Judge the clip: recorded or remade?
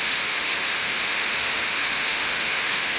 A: remade